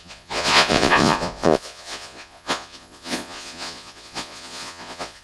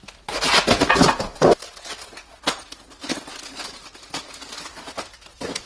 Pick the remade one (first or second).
first